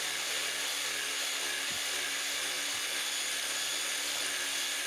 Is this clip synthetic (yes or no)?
no